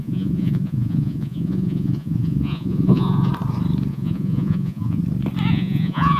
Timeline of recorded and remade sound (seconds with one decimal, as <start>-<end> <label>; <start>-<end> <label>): 0.0-3.3 remade; 3.3-3.9 recorded; 3.9-5.0 remade; 5.0-5.5 recorded; 5.5-6.2 remade